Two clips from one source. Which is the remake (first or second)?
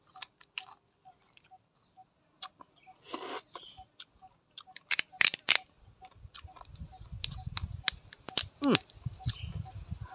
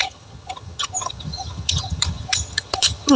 second